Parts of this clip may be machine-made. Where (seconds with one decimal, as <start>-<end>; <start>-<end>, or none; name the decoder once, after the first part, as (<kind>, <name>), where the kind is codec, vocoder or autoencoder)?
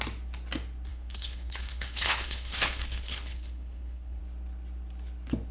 0.9-4.2 (codec, HILCodec)